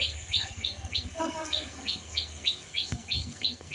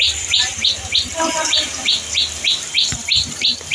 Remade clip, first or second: first